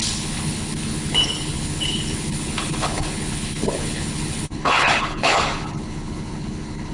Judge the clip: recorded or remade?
remade